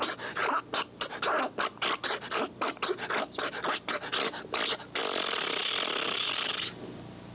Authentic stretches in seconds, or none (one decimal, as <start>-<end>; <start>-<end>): 0.4-3.2; 4.1-5.0

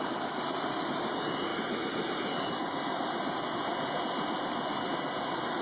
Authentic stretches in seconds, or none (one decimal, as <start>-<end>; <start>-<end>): 0.0-5.6

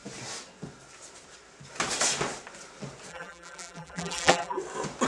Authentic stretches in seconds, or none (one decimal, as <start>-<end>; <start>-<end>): 0.0-3.1; 4.6-5.1